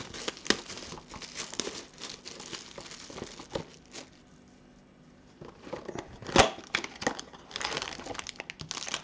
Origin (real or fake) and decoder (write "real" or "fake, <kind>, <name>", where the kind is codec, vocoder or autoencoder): real